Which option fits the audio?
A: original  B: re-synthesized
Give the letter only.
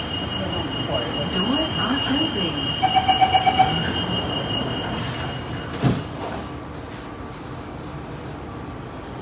A